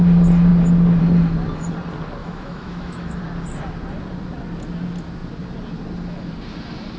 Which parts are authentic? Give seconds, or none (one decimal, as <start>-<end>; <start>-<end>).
0.0-2.2; 3.2-7.0